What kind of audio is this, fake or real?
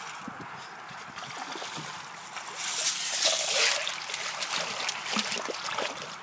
real